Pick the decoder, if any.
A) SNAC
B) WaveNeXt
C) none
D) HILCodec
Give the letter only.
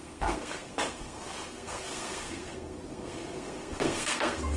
A